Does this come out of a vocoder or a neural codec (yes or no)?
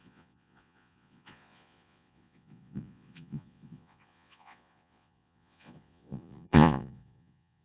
yes